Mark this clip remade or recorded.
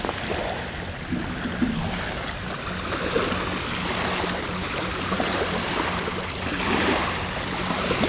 recorded